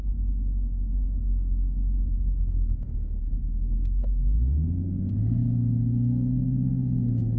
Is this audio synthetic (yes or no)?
yes